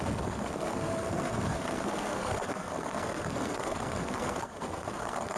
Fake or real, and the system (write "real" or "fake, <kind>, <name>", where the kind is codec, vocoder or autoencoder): fake, codec, SNAC